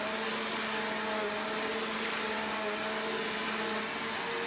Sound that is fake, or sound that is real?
real